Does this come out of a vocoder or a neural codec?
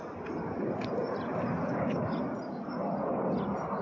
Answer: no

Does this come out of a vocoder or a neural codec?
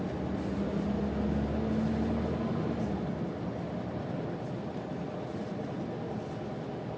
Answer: no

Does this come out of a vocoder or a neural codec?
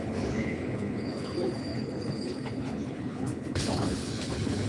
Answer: yes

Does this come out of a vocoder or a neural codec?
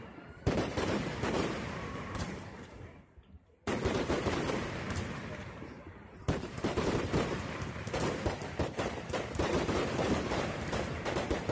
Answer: yes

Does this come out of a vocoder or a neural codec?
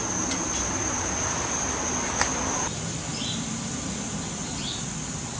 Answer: no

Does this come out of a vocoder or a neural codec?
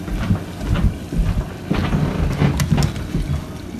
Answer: no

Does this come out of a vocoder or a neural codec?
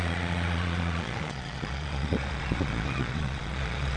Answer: yes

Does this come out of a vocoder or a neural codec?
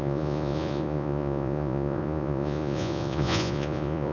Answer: yes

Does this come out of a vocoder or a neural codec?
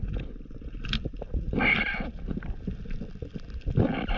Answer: no